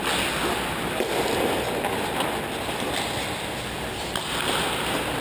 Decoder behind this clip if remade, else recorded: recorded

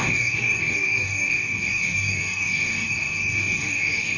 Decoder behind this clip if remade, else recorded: remade, codec, DAC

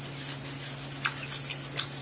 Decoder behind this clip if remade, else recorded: recorded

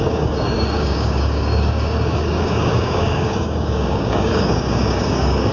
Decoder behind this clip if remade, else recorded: remade, codec, DAC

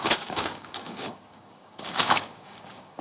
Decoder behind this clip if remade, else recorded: remade, codec, DAC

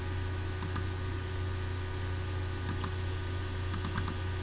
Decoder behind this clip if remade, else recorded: recorded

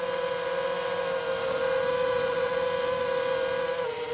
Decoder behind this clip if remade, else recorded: recorded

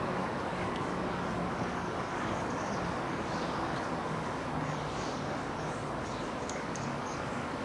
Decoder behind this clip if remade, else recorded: remade, codec, DAC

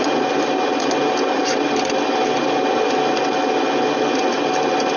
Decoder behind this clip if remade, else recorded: recorded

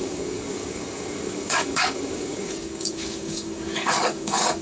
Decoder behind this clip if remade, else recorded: remade, codec, DAC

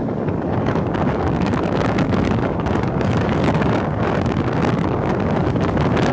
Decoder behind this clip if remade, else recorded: remade, codec, DAC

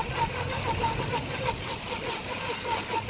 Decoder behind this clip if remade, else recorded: recorded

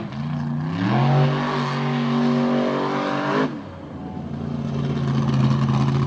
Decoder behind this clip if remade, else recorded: recorded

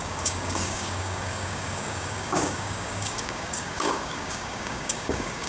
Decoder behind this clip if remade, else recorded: remade, codec, DAC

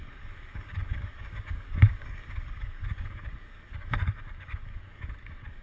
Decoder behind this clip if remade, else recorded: remade, codec, DAC